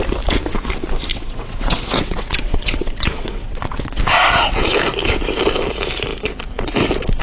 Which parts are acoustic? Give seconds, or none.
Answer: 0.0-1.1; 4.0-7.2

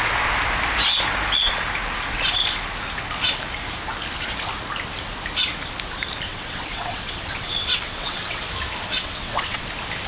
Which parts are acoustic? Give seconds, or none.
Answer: 0.0-6.3; 8.4-9.0; 9.6-10.1